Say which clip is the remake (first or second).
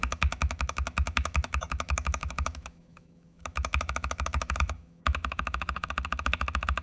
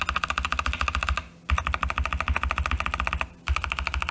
first